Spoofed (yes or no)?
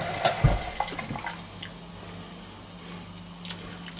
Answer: no